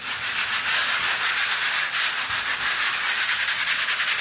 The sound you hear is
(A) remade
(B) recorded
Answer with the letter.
B